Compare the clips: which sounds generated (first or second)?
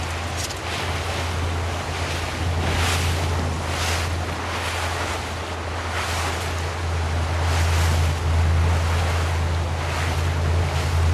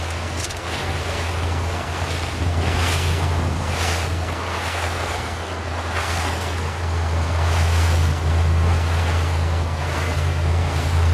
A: second